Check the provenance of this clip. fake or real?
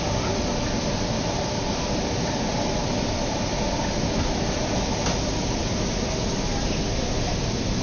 real